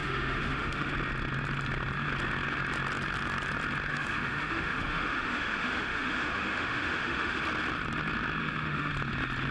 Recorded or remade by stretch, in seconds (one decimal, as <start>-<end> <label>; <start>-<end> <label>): 0.0-0.9 remade; 0.9-3.9 recorded; 3.9-7.4 remade; 7.4-8.4 recorded; 8.4-8.9 remade; 8.9-9.5 recorded